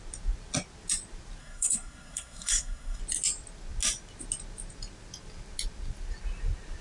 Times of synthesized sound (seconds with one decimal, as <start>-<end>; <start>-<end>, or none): 1.4-3.0